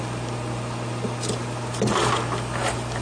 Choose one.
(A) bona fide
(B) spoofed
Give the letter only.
A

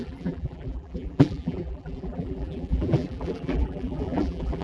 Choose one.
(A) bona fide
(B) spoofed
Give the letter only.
B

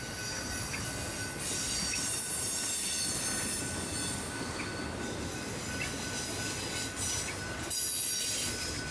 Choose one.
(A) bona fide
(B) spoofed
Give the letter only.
A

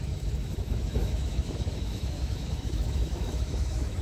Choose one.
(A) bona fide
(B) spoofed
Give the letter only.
B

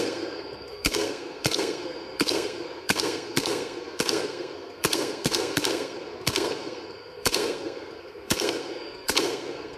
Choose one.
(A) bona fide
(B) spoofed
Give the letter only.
B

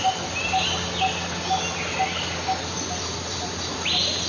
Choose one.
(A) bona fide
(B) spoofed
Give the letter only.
A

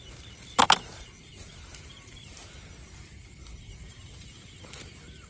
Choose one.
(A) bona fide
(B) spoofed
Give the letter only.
A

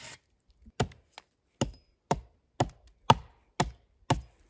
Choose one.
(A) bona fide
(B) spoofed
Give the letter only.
A